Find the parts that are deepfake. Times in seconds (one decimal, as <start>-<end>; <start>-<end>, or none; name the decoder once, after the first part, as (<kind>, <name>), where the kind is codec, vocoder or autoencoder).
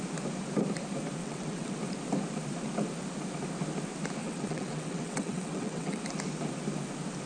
1.2-1.7 (vocoder, WaveNeXt); 4.2-6.0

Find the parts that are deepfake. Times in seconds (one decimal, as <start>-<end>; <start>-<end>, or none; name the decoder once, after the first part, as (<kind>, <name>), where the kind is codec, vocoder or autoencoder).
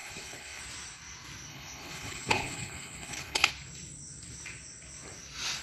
0.0-0.6 (codec, HILCodec); 1.5-3.5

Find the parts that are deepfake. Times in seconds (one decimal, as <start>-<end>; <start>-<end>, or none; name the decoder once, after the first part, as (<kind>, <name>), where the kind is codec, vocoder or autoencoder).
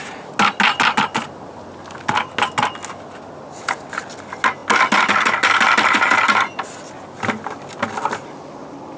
none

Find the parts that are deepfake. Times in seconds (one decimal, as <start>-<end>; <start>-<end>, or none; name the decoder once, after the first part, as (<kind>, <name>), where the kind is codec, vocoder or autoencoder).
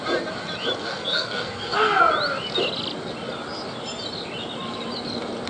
0.8-2.0 (codec, SNAC)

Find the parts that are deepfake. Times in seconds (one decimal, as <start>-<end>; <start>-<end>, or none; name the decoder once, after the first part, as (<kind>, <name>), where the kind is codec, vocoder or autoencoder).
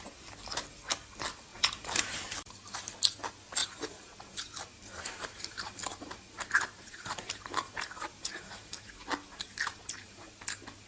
1.5-2.8 (vocoder, BigVGAN v2); 3.6-8.9; 9.7-10.4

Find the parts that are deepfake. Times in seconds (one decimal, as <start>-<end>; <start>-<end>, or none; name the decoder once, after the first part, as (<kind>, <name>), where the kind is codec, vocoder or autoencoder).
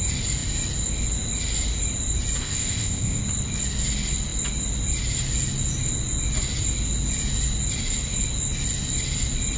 2.4-3.2 (codec, ZipCodec)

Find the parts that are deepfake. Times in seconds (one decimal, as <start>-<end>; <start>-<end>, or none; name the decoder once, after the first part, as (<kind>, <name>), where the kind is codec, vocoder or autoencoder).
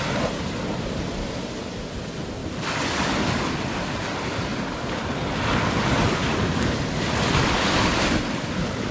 none